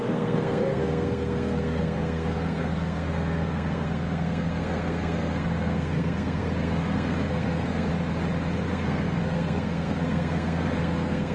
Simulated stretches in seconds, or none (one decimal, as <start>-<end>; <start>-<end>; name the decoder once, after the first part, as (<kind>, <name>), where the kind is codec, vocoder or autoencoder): 0.0-7.9 (codec, SNAC); 8.7-11.3